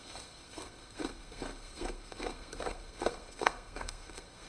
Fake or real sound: fake